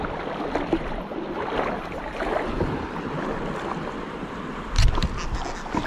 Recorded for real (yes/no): yes